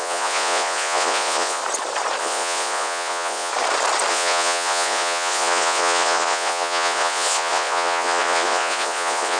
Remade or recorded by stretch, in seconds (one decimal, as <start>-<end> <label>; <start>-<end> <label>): 0.0-1.6 remade; 1.6-2.2 recorded; 2.2-3.5 remade; 3.5-4.1 recorded; 4.1-9.4 remade